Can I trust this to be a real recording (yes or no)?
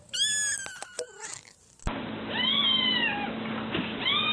yes